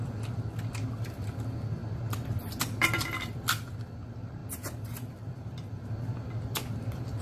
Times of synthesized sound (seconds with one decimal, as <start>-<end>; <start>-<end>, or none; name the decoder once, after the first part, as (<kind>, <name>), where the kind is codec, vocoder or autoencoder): 0.0-1.8 (vocoder, BigVGAN v2); 2.4-7.2